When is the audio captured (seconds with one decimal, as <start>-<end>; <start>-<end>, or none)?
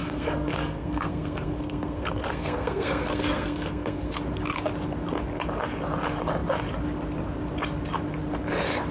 4.2-8.9